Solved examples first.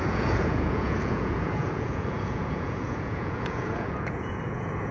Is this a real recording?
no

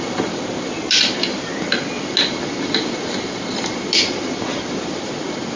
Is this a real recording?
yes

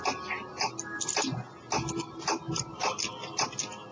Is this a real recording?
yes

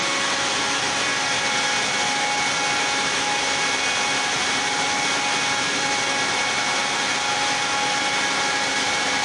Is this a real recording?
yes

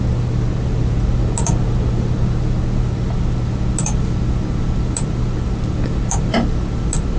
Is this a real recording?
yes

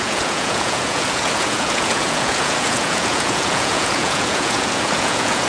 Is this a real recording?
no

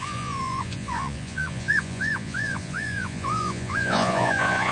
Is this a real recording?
no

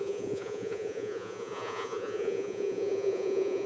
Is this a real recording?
no